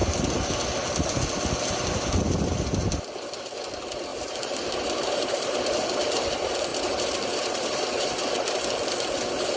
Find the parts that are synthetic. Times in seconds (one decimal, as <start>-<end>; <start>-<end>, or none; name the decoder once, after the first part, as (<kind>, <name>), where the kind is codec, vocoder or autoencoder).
4.1-5.7 (vocoder, BigVGAN v2); 6.7-8.2